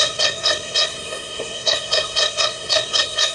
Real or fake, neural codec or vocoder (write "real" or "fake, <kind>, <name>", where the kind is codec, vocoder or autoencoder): fake, codec, SNAC